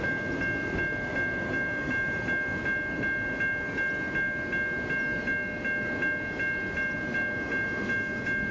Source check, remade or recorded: recorded